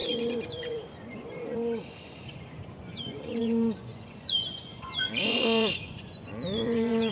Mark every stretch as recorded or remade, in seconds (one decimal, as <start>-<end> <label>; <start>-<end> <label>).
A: 0.0-7.1 remade